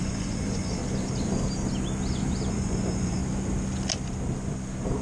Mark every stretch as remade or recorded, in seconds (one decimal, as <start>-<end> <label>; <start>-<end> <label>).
0.0-0.8 remade; 0.8-2.5 recorded; 2.5-3.2 remade; 3.2-5.0 recorded